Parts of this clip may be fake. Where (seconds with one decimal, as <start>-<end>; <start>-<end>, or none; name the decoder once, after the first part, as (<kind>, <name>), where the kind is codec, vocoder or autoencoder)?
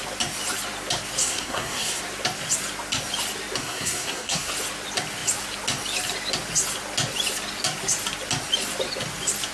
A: 1.2-2.0 (codec, SNAC); 3.6-4.5